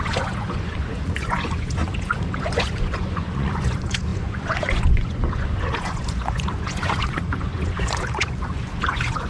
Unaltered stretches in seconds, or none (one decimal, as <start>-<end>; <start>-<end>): none